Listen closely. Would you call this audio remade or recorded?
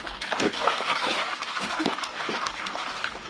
remade